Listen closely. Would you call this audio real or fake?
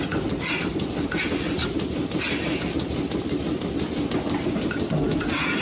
real